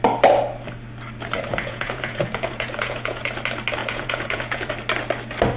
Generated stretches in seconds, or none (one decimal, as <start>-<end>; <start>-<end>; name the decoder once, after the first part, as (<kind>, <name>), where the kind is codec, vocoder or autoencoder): 1.5-3.2 (vocoder, Vocos); 3.8-4.7